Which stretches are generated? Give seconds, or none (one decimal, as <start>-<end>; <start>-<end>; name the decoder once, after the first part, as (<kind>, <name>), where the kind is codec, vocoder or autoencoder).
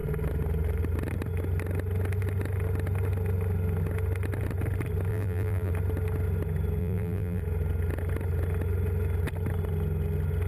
5.1-5.7 (vocoder, BigVGAN v2); 6.8-7.4